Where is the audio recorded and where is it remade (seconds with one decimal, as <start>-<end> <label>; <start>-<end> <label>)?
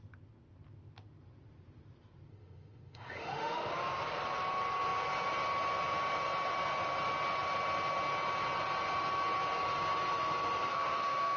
0.0-2.3 recorded; 2.3-3.7 remade; 3.7-10.7 recorded; 10.7-11.4 remade